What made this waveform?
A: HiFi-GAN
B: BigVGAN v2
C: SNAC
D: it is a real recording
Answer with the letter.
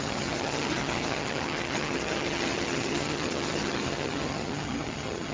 A